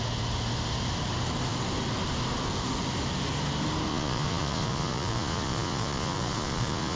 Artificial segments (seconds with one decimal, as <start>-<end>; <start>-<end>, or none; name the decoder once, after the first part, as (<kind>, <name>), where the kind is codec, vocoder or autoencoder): 3.9-7.0 (vocoder, Vocos)